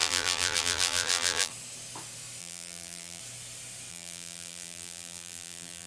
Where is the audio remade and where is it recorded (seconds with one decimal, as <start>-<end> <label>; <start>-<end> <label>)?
0.0-1.5 remade; 1.5-2.4 recorded; 2.4-3.2 remade; 3.2-3.9 recorded; 3.9-5.9 remade